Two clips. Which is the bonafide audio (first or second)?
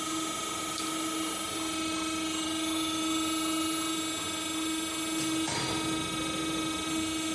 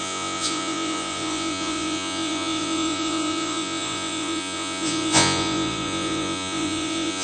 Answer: first